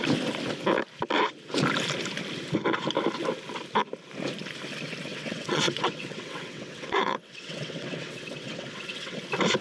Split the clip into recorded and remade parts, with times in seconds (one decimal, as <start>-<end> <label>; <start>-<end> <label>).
0.0-5.1 recorded; 5.1-9.2 remade; 9.2-9.6 recorded